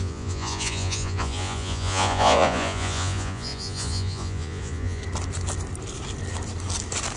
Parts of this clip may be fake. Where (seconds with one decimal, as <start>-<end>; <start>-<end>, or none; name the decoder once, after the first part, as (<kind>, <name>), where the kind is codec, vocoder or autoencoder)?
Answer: 0.0-5.0 (vocoder, Vocos)